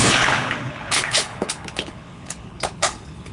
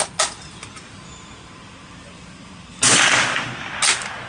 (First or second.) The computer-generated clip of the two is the first